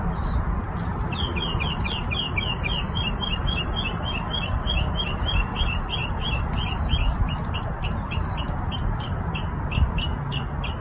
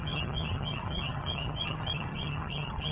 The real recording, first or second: first